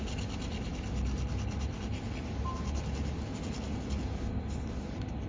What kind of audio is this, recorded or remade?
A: recorded